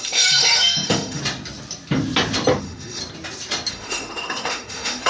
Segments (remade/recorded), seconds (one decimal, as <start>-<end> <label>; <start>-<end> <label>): 0.0-1.2 remade; 1.2-2.6 recorded; 2.6-3.0 remade; 3.0-3.7 recorded; 3.7-5.1 remade